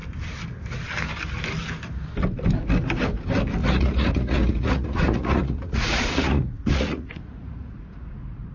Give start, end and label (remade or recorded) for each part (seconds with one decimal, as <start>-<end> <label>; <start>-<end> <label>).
0.0-3.6 recorded; 3.6-8.5 remade